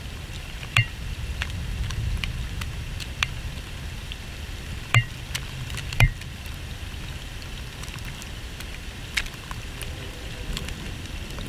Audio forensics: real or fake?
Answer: fake